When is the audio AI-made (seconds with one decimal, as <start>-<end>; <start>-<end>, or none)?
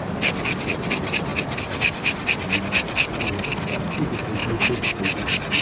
4.4-5.0